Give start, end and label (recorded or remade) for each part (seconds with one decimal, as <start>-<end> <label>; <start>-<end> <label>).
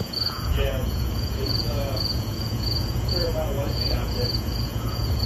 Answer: 0.0-5.3 remade